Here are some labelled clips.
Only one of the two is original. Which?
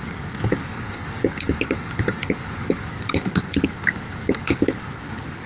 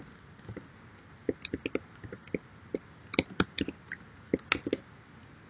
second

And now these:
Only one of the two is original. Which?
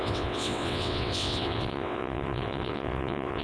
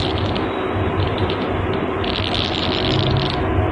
second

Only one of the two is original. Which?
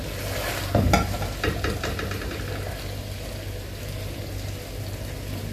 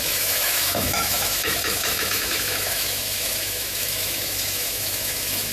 first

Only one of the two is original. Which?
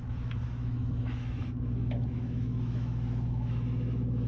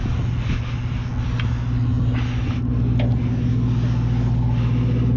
second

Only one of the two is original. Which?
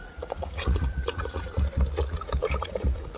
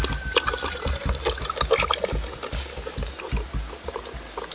second